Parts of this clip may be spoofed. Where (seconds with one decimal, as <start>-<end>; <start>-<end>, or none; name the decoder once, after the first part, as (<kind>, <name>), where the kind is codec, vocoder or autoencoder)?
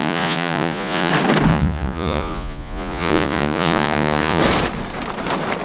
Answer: 0.0-1.1 (vocoder, Vocos); 1.5-4.4